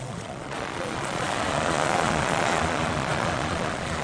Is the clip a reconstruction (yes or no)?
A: yes